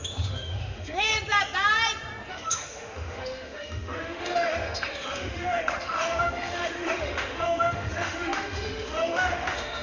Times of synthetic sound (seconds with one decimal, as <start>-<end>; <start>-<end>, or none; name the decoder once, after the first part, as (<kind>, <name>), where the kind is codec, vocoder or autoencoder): 0.0-1.1 (autoencoder, DAC-VAE); 2.3-9.8